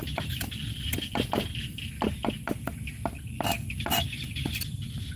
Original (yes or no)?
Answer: yes